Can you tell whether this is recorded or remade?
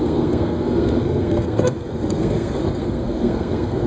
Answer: remade